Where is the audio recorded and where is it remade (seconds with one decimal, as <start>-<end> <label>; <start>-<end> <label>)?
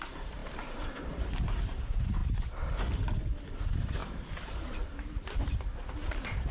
0.0-2.2 remade; 2.2-3.0 recorded; 3.0-6.5 remade